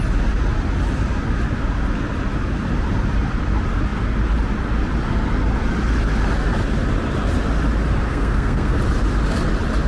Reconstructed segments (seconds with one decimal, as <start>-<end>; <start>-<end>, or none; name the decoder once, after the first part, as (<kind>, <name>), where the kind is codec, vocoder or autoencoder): 8.1-8.8 (codec, SNAC)